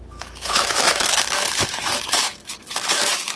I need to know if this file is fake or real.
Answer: fake